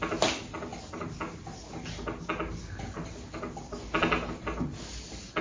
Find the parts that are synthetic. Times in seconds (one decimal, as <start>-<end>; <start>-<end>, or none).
none